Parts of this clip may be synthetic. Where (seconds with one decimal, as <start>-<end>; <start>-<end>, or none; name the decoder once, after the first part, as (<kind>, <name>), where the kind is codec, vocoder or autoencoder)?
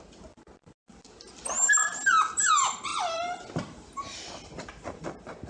none